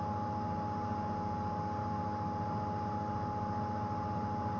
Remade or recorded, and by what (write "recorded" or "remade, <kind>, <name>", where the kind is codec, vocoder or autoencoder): recorded